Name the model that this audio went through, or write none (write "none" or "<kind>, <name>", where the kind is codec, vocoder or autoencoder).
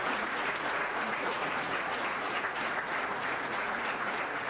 vocoder, Vocos